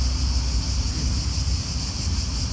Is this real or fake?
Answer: real